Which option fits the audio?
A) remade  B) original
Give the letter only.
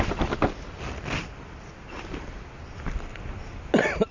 B